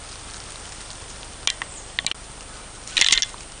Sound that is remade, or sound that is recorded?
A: recorded